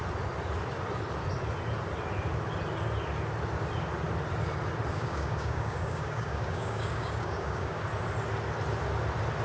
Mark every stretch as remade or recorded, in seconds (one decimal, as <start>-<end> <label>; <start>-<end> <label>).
0.0-4.9 recorded; 4.9-7.8 remade; 7.8-9.4 recorded